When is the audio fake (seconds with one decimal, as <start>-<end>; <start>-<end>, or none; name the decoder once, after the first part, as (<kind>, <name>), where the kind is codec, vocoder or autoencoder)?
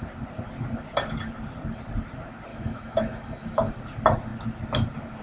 2.5-3.7 (autoencoder, DAC-VAE)